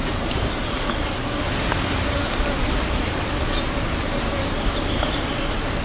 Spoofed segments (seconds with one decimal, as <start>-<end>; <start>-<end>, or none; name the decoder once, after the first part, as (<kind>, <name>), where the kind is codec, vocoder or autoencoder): 0.0-5.8 (vocoder, BigVGAN v2)